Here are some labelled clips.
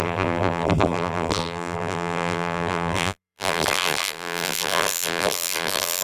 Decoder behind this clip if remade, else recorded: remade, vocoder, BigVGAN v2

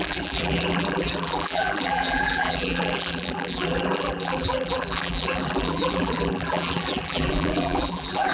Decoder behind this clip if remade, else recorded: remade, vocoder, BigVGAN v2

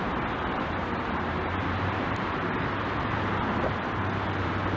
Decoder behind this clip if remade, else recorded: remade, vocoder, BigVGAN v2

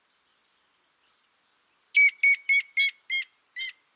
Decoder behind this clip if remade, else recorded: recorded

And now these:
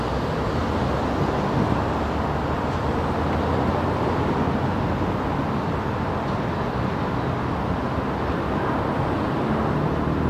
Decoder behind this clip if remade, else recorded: recorded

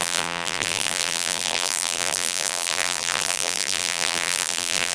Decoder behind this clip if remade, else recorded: remade, vocoder, BigVGAN v2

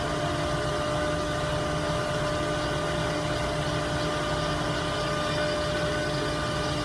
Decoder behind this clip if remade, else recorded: recorded